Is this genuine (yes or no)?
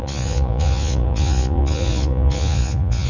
no